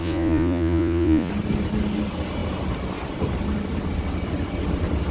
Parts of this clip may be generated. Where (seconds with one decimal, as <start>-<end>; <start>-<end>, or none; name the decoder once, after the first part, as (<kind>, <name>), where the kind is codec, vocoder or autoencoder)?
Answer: 0.0-1.3 (vocoder, Vocos)